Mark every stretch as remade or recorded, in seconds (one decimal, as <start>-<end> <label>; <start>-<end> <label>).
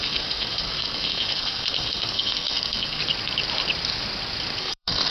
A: 0.0-3.0 remade; 3.0-4.6 recorded; 4.6-5.1 remade